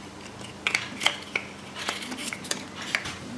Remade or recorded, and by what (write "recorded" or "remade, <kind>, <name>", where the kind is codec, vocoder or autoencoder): recorded